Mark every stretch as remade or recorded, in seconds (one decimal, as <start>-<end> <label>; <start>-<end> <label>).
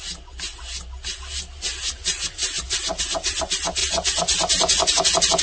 0.0-5.4 recorded